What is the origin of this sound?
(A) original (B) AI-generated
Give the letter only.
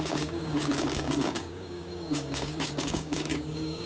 B